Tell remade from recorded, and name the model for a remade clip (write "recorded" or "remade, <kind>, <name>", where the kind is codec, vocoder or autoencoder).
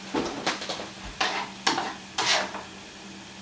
recorded